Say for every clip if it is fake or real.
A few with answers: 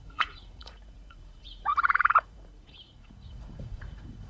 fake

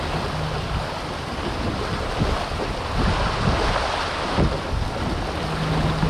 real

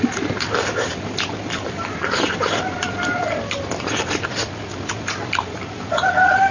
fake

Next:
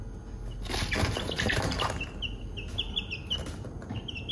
real